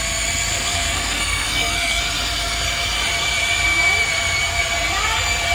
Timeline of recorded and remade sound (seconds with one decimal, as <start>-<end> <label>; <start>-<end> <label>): 0.0-0.5 recorded; 0.5-2.0 remade; 2.0-5.5 recorded